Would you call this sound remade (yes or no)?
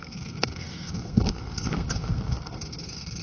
yes